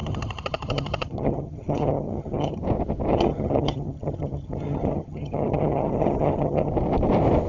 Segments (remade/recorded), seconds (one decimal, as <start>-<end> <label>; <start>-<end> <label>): 0.0-2.6 remade; 2.6-3.1 recorded; 3.1-6.7 remade; 6.7-7.5 recorded